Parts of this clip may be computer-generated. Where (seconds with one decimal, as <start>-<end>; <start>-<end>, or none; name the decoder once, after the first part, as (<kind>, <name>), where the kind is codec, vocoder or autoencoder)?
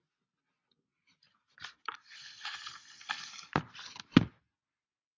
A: none